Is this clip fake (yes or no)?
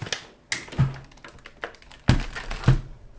no